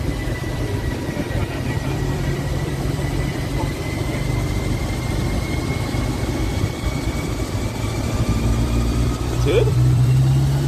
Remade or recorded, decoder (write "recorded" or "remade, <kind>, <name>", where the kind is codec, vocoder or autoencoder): remade, vocoder, BigVGAN v2